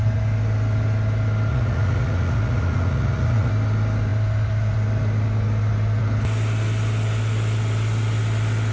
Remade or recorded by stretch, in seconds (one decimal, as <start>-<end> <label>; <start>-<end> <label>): 0.0-1.5 recorded; 1.5-3.5 remade; 3.5-8.7 recorded